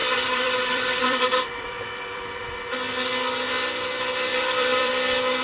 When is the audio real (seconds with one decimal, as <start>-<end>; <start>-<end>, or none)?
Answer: 2.7-4.3; 4.9-5.4